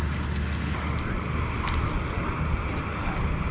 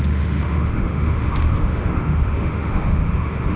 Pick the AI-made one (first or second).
second